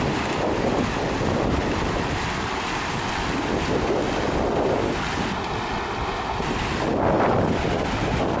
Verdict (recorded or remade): recorded